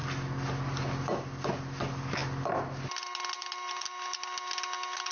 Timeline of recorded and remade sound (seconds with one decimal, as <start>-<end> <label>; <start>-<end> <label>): 0.0-5.1 recorded